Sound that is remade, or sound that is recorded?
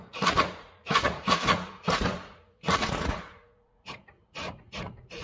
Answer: remade